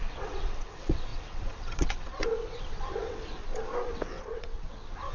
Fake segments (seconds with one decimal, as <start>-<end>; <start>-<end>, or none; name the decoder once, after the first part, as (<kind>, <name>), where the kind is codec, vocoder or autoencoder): 0.0-3.4 (vocoder, WaveNeXt); 3.9-5.1